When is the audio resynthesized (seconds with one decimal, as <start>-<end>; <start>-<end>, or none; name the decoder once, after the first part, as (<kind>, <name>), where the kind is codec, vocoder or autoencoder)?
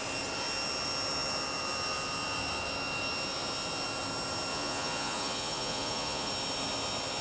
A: 4.5-6.3 (vocoder, Vocos)